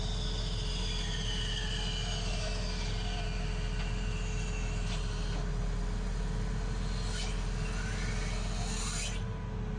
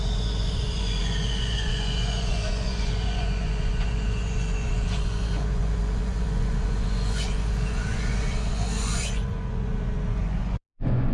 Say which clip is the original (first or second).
first